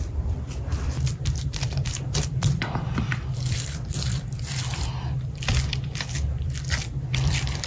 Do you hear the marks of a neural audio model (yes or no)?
yes